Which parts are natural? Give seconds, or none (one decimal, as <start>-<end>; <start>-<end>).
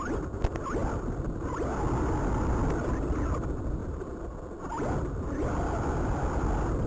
0.0-6.9